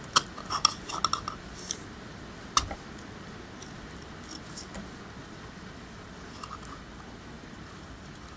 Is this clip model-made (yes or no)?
no